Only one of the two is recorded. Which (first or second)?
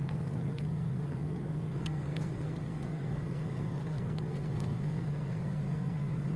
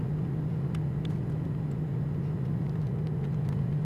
second